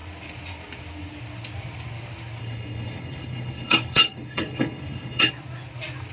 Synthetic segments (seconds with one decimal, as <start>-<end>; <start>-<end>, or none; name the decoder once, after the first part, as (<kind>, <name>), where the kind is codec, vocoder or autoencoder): 2.4-5.3 (codec, HILCodec)